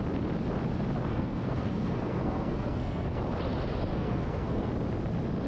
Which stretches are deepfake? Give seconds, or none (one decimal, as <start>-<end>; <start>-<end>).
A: 1.1-3.2; 3.9-4.7